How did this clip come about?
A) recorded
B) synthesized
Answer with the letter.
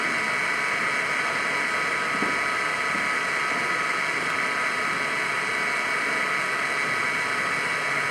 A